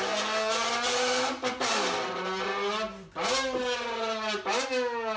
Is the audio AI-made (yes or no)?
no